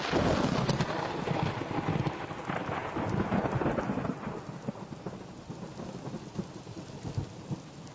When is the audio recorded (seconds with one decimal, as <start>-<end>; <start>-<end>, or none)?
0.0-7.9